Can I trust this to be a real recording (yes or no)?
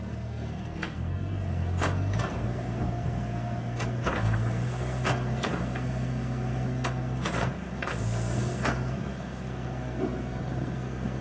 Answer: no